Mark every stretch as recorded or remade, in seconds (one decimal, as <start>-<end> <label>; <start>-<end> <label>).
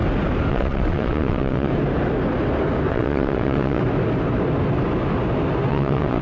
0.0-0.5 recorded; 0.5-1.7 remade; 1.7-2.9 recorded; 2.9-3.8 remade; 3.8-5.7 recorded; 5.7-6.2 remade